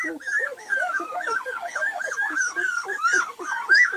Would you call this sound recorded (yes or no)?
no